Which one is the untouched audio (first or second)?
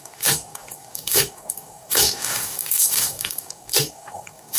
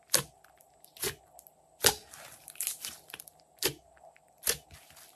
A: second